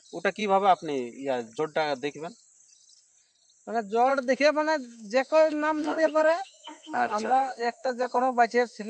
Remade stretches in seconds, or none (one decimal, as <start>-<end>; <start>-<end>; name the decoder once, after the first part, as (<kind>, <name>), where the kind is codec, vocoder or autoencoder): 4.1-8.9 (autoencoder, DAC-VAE)